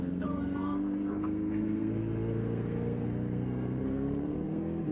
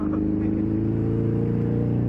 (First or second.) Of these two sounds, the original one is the second